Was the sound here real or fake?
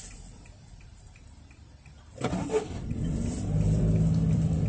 fake